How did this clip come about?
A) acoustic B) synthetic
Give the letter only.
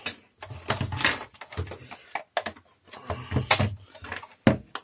A